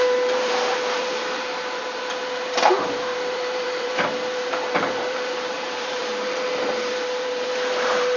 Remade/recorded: remade